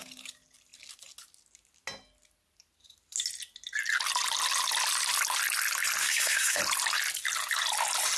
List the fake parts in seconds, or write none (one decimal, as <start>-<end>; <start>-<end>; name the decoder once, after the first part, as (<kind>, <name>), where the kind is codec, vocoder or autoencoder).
6.0-6.6 (codec, SNAC)